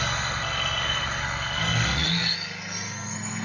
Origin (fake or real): fake